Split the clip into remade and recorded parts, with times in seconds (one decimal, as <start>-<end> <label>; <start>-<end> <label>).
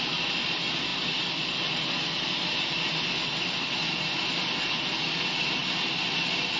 0.0-6.6 recorded